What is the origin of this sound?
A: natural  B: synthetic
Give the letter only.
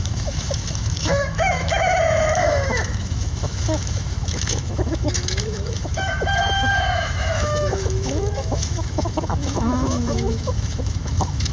B